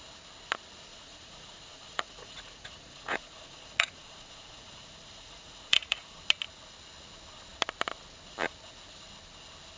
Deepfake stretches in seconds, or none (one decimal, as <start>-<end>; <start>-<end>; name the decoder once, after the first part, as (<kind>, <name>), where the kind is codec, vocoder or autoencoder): 0.9-6.2 (vocoder, Vocos)